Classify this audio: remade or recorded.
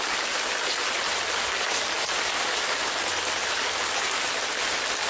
recorded